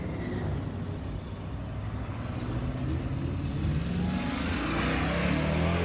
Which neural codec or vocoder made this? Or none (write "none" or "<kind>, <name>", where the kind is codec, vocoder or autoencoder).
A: none